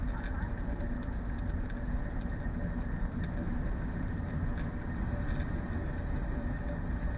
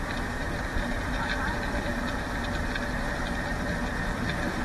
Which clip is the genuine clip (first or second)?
first